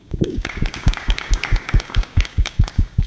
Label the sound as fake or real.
fake